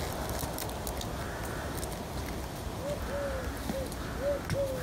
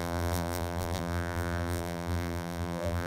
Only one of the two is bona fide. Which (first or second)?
first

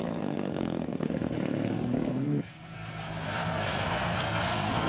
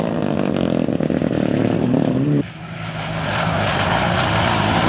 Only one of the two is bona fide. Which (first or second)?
second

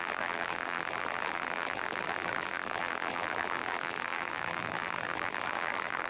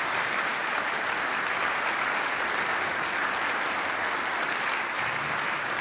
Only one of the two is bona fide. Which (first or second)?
second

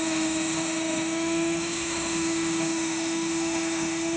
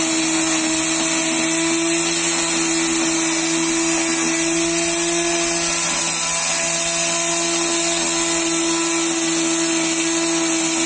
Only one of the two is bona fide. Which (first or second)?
second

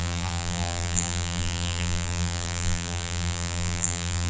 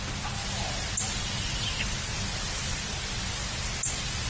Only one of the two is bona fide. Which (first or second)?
second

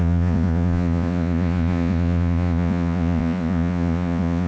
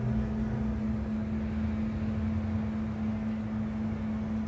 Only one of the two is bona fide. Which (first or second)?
second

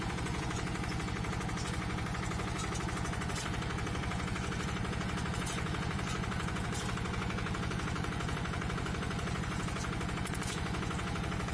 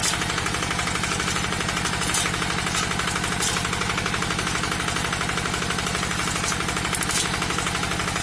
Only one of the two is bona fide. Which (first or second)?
second